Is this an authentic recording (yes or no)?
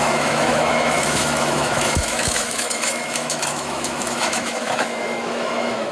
no